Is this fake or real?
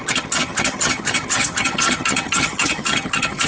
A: fake